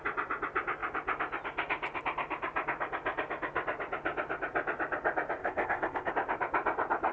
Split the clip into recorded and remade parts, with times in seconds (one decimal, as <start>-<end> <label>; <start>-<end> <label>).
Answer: 0.0-5.4 recorded; 5.4-6.1 remade; 6.1-7.1 recorded